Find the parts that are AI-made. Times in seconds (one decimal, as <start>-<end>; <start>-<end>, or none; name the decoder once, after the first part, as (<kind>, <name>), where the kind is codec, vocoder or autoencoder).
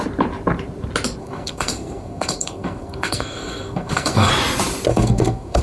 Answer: 1.2-4.3 (codec, SNAC); 4.9-5.6